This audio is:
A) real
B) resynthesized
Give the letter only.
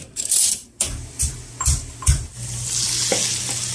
A